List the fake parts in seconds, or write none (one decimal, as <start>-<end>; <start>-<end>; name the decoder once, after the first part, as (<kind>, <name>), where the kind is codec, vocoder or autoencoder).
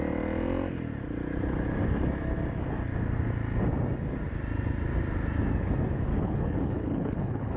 6.1-7.6 (codec, HILCodec)